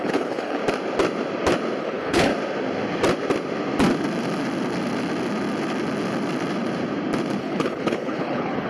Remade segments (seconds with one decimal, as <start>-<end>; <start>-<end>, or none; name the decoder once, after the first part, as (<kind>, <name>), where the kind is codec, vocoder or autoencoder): 0.0-0.6 (codec, HILCodec); 1.8-2.3; 7.4-8.7